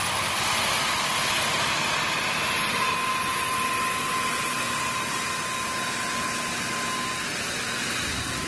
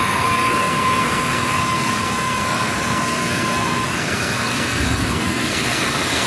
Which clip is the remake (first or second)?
second